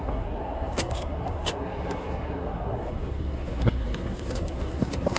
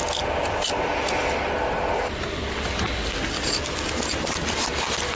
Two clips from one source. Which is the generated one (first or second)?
first